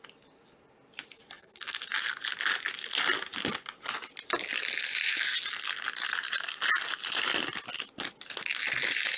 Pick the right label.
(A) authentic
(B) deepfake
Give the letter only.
A